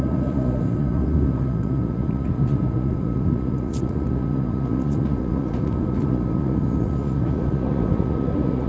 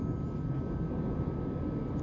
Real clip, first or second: second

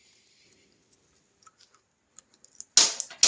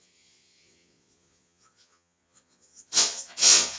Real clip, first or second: first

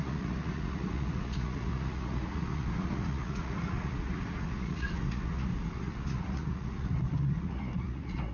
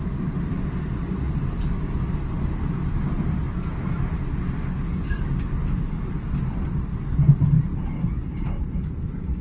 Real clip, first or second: second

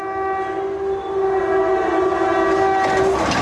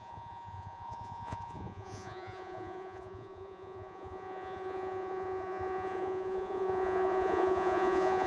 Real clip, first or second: first